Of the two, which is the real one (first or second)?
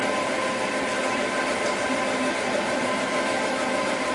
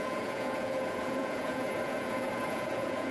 first